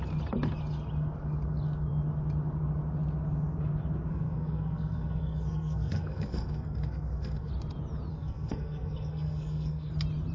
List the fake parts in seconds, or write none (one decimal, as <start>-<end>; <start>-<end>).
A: 4.1-7.5; 8.1-9.9